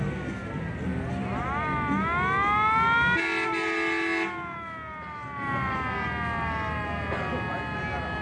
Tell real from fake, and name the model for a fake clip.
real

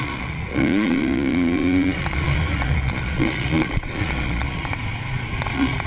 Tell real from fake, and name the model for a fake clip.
fake, vocoder, Vocos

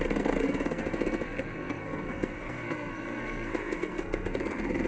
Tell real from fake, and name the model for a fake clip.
fake, codec, SNAC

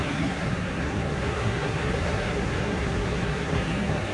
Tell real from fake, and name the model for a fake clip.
fake, codec, SNAC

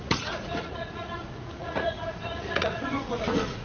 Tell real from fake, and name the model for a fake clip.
fake, vocoder, Vocos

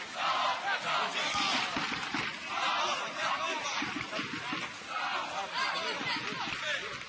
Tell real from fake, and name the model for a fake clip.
real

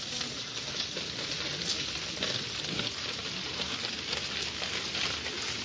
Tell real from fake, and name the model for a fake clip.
real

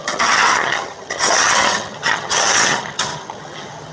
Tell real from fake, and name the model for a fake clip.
fake, vocoder, HiFi-GAN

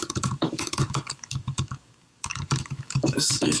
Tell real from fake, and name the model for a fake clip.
fake, codec, DAC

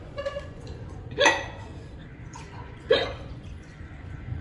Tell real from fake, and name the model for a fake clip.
fake, vocoder, Vocos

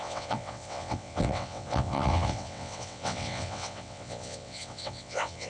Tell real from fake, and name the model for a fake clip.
fake, vocoder, WaveNeXt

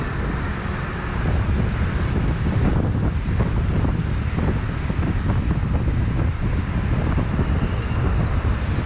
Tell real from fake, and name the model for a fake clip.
real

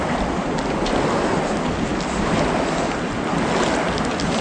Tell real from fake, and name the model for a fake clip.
real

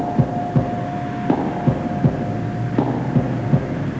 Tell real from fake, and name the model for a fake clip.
real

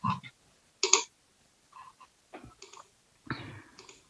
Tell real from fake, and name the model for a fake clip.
real